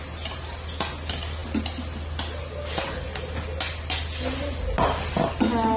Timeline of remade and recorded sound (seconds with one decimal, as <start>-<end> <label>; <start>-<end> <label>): 0.0-5.8 recorded